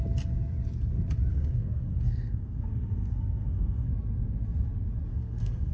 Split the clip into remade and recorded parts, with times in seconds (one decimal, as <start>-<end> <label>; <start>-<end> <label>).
0.0-1.3 recorded; 1.3-3.9 remade; 3.9-5.1 recorded; 5.1-5.7 remade